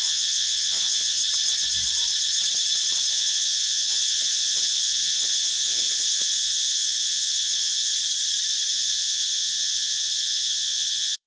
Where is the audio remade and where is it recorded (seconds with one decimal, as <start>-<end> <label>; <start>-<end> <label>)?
0.0-1.2 remade; 1.2-3.1 recorded; 3.1-7.9 remade; 7.9-8.7 recorded; 8.7-11.3 remade